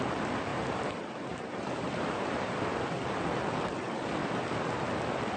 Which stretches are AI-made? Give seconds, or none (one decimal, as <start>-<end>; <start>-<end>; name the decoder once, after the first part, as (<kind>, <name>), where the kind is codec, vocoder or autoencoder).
0.5-3.0 (vocoder, BigVGAN v2); 4.2-4.8